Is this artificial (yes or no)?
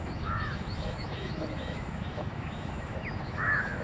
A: yes